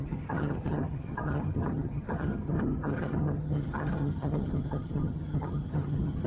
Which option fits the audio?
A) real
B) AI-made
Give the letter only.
B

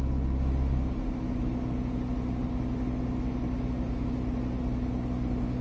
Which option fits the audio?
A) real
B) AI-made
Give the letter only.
A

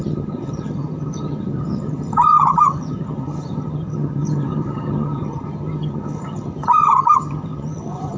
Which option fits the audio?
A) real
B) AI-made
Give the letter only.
B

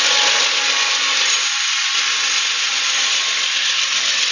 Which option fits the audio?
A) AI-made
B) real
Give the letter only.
B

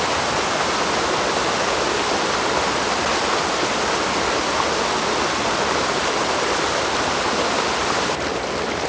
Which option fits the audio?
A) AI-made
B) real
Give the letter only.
B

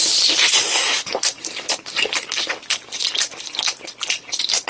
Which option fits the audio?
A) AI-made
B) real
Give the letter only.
B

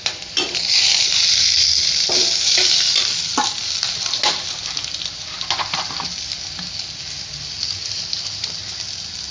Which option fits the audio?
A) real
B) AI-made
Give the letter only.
A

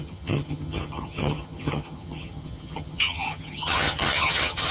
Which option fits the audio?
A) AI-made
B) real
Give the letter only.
A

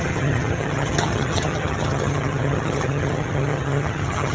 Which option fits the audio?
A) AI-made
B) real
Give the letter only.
A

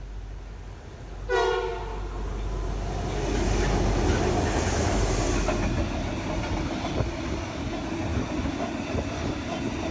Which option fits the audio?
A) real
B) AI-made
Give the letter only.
A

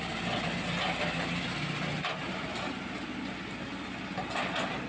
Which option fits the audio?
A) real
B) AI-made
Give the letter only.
A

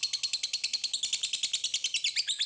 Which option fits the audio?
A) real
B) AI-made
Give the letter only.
A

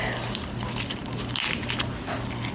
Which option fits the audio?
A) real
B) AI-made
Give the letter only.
A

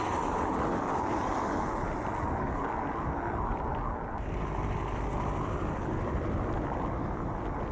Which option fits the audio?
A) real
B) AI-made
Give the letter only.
A